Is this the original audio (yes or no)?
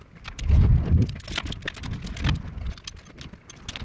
yes